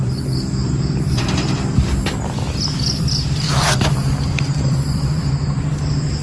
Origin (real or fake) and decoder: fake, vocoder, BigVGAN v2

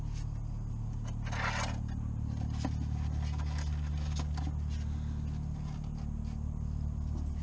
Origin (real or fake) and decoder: real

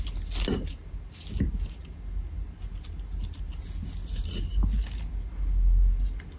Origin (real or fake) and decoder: real